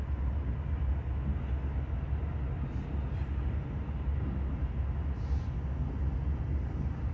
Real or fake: real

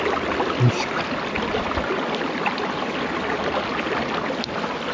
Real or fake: real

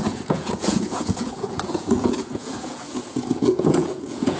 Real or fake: fake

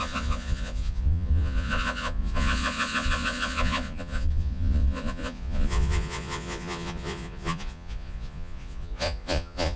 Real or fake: fake